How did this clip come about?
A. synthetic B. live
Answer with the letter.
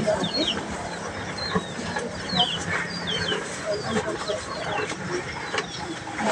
A